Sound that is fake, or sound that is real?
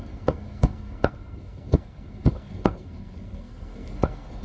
fake